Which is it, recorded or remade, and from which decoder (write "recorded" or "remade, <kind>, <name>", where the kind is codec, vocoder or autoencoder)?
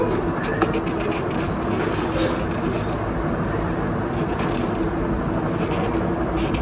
recorded